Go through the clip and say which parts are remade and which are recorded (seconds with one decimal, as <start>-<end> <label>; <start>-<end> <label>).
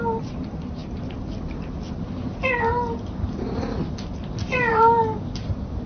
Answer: 0.0-5.9 recorded